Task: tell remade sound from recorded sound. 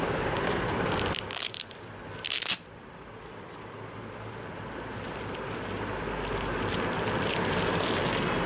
recorded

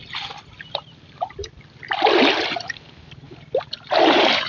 recorded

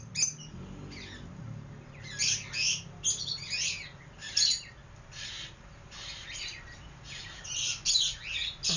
recorded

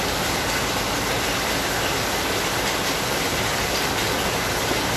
recorded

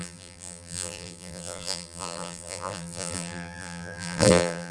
remade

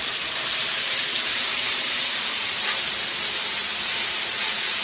remade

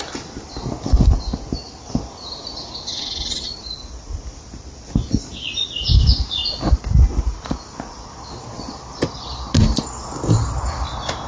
recorded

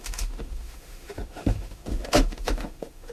remade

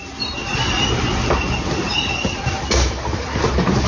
recorded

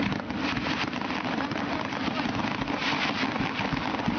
recorded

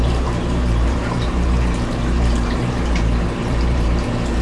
remade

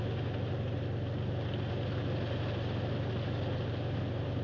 recorded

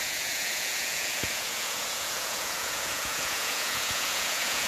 remade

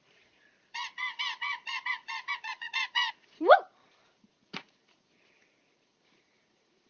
remade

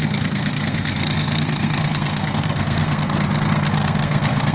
remade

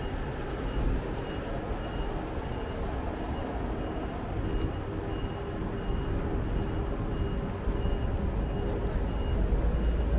recorded